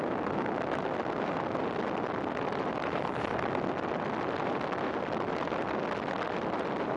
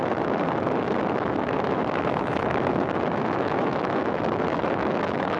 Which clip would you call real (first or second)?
first